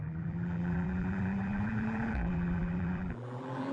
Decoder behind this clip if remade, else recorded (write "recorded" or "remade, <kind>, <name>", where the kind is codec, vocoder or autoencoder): remade, vocoder, BigVGAN v2